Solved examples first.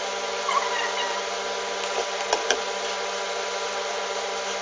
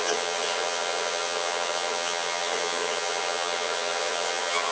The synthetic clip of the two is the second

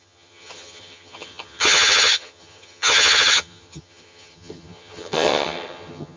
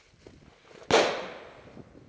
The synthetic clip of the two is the first